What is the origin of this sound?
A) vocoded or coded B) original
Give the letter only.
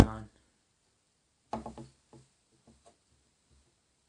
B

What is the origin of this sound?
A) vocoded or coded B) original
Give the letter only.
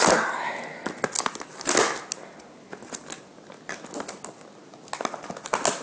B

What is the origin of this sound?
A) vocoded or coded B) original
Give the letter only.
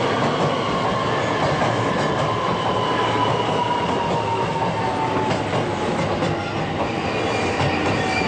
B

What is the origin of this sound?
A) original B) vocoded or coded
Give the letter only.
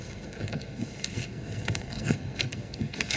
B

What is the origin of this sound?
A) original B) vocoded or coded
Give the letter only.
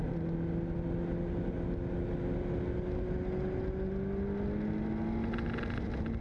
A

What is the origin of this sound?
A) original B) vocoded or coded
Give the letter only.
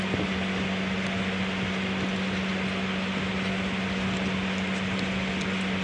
A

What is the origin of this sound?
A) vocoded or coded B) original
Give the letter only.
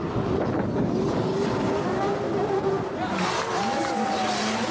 B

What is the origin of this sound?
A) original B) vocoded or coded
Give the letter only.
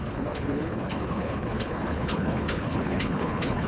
B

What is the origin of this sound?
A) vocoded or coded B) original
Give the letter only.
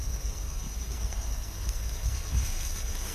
A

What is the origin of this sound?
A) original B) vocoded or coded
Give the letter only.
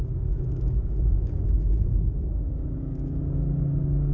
B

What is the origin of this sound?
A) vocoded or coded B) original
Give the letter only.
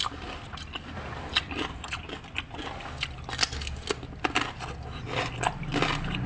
B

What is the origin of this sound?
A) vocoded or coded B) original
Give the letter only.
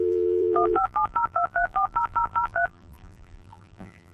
A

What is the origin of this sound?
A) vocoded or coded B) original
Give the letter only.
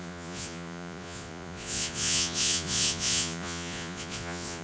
A